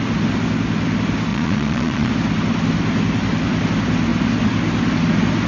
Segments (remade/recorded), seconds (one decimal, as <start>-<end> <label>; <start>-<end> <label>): 0.0-1.3 recorded; 1.3-2.1 remade; 2.1-5.5 recorded